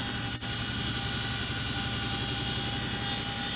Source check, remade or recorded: recorded